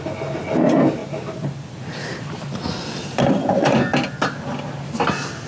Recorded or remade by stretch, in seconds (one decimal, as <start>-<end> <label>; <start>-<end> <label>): 0.0-1.0 recorded; 1.0-3.6 remade; 3.6-5.5 recorded

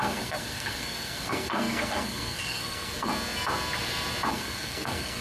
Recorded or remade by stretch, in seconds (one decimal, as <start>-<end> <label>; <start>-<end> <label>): 0.0-3.1 remade; 3.1-4.3 recorded; 4.3-5.2 remade

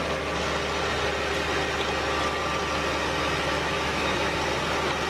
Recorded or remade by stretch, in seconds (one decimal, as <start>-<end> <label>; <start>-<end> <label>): 0.0-3.5 recorded; 3.5-4.4 remade; 4.4-5.1 recorded

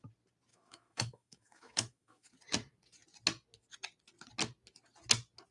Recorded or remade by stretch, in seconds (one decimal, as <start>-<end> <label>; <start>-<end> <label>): 0.0-0.5 recorded; 0.5-2.3 remade; 2.3-5.5 recorded

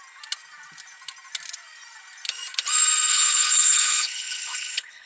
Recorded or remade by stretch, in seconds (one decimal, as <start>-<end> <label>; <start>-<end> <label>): 0.0-3.1 recorded; 3.1-5.1 remade